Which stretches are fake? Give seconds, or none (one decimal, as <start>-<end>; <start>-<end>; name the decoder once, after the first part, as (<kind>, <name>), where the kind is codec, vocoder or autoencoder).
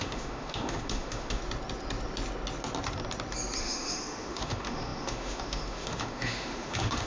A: 0.0-1.4 (autoencoder, DAC-VAE); 3.6-7.1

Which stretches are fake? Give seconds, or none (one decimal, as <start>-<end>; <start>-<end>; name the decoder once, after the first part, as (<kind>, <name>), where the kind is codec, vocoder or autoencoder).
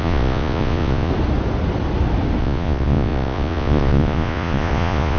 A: 0.0-1.1 (vocoder, Vocos); 2.4-5.2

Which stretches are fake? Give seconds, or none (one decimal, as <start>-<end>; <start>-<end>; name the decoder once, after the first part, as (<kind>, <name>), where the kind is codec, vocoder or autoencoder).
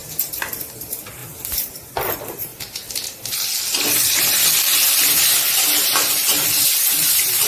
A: 0.0-0.5 (vocoder, BigVGAN v2); 1.2-1.9